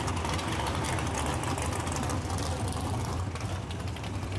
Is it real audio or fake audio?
real